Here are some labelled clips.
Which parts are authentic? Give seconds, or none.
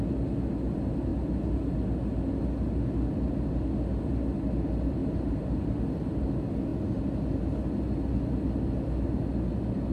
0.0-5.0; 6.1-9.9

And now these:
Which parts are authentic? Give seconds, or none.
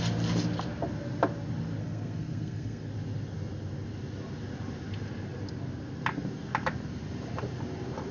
0.0-1.8; 2.9-8.1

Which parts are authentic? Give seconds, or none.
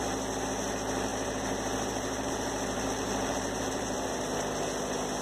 0.0-1.1; 4.2-5.2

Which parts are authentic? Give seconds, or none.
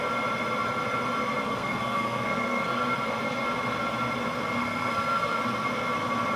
0.0-1.4; 2.8-4.6; 5.4-6.4